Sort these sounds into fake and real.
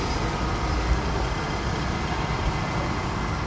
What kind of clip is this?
real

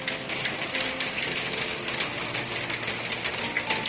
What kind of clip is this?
real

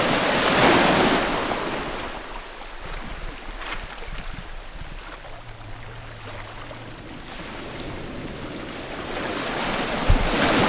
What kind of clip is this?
real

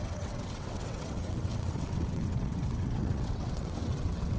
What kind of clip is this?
fake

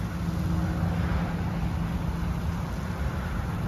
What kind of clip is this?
real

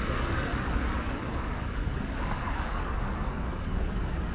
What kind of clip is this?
fake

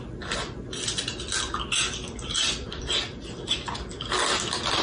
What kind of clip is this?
real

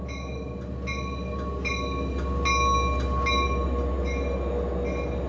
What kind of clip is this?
real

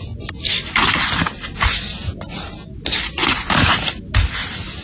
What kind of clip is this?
real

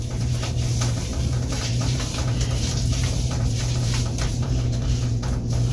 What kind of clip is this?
fake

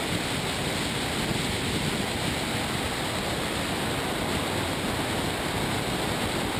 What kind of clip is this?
real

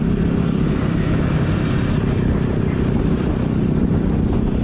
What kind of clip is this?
real